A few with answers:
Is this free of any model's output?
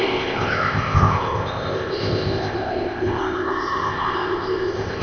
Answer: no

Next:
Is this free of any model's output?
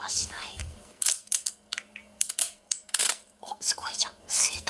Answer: no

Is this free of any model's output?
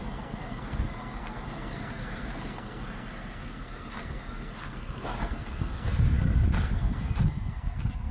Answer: no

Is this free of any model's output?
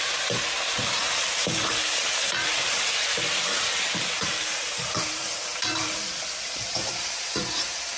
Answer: no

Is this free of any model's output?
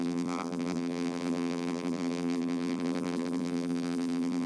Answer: no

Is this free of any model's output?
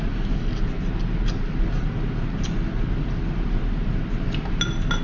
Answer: yes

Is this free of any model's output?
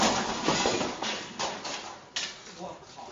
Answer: yes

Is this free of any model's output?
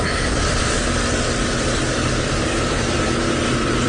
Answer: no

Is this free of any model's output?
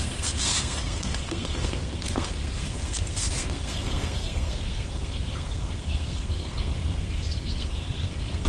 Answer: no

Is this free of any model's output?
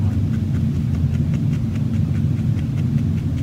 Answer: yes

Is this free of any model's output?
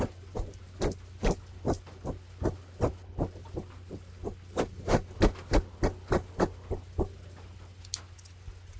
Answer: yes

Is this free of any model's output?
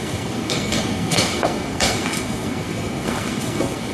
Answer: no